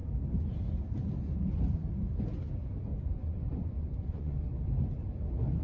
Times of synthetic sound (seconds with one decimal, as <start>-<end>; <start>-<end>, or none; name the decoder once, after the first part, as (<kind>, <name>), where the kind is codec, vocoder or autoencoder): 2.9-4.4 (vocoder, Vocos)